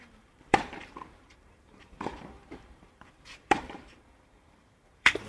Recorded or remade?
remade